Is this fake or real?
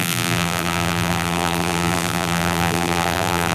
fake